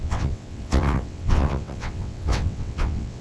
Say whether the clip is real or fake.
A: fake